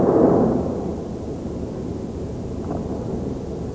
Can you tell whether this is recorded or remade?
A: recorded